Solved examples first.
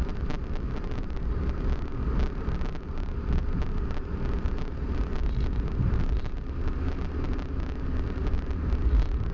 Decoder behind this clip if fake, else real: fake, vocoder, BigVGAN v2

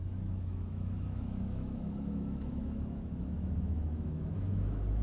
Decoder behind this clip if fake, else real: fake, autoencoder, DAC-VAE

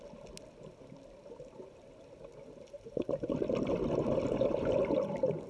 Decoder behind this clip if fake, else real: real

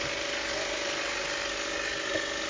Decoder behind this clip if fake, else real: real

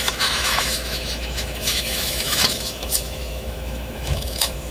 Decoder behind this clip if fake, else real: fake, autoencoder, DAC-VAE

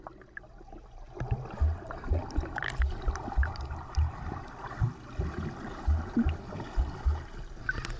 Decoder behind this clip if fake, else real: real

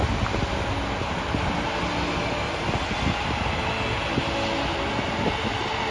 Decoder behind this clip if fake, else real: real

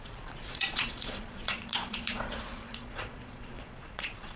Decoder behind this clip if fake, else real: fake, vocoder, Vocos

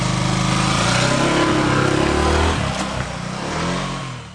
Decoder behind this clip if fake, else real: real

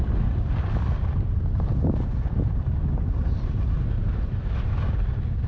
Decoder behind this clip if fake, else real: real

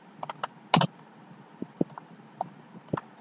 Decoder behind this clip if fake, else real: real